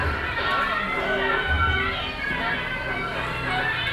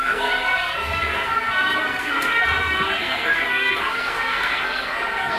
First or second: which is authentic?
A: first